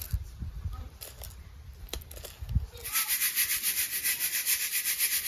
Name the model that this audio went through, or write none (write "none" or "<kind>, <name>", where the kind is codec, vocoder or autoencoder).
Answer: vocoder, BigVGAN v2